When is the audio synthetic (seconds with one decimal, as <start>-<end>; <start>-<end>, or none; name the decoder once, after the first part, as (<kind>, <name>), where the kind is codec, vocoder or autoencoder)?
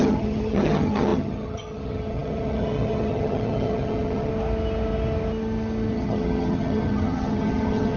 0.0-4.3 (vocoder, HiFi-GAN); 5.9-8.0